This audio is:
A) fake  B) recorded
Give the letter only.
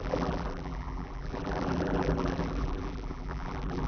A